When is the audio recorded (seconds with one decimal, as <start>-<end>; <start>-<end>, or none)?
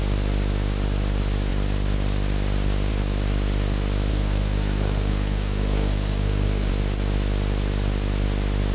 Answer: 0.0-4.1; 6.7-8.7